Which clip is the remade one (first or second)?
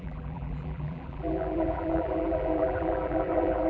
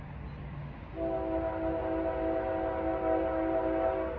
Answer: first